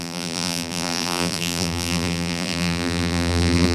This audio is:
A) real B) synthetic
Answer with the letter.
B